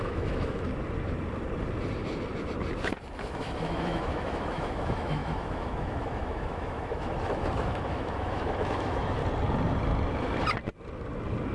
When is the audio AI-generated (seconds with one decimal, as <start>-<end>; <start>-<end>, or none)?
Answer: 0.0-0.7; 3.2-9.2